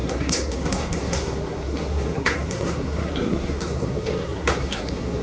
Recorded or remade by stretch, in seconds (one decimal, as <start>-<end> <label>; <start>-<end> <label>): 0.0-5.2 remade